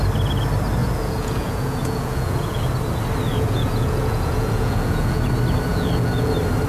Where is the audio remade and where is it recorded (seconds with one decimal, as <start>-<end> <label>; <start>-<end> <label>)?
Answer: 0.0-0.8 recorded; 0.8-2.6 remade; 2.6-3.3 recorded; 3.3-5.3 remade; 5.3-5.7 recorded; 5.7-6.3 remade; 6.3-6.7 recorded